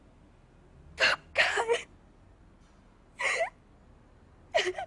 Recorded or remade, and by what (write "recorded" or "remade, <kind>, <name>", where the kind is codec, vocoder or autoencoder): recorded